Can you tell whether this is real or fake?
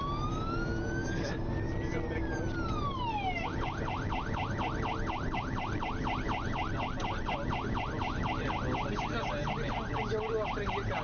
real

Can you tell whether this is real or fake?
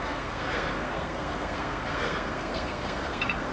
fake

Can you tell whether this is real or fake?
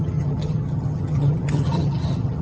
fake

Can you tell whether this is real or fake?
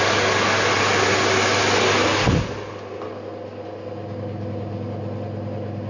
real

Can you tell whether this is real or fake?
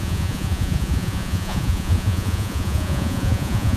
fake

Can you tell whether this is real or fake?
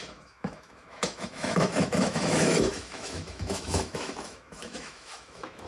fake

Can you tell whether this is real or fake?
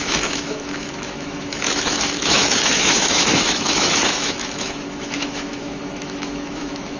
fake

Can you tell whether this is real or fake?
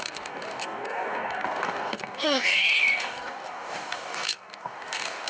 fake